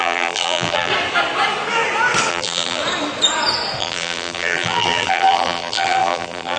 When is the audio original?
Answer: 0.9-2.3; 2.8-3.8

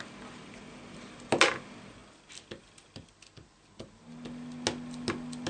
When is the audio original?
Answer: 0.0-5.5

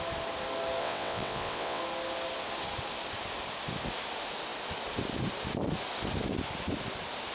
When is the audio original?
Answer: 0.0-0.8; 1.8-7.3